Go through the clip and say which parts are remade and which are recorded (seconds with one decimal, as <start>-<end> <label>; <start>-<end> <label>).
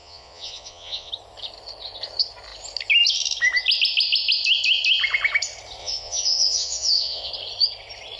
0.0-1.1 remade; 1.1-5.8 recorded; 5.8-7.3 remade; 7.3-8.2 recorded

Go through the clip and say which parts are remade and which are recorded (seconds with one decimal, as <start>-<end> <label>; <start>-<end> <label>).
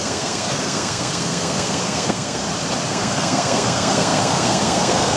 0.0-2.4 remade; 2.4-2.9 recorded; 2.9-5.2 remade